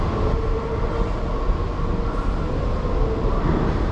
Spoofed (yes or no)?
no